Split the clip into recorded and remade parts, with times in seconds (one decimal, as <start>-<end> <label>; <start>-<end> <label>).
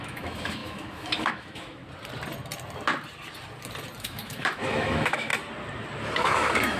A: 0.0-1.8 remade; 1.8-4.0 recorded; 4.0-5.3 remade; 5.3-6.0 recorded; 6.0-6.8 remade